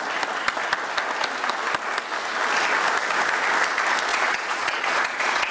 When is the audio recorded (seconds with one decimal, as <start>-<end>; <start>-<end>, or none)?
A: 0.0-4.1